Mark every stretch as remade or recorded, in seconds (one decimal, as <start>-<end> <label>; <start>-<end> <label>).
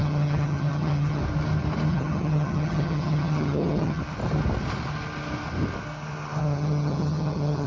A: 0.0-1.2 remade; 1.2-1.9 recorded; 1.9-4.0 remade; 4.0-6.4 recorded; 6.4-7.7 remade